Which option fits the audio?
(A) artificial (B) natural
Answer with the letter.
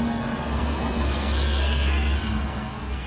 A